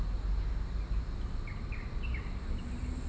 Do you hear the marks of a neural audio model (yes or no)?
no